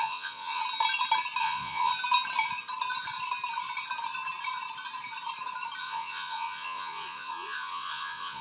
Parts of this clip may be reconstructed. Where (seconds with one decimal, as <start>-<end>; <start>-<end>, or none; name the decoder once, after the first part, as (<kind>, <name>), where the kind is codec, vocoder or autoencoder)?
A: 0.0-0.6 (vocoder, Vocos); 1.4-1.9; 5.8-8.4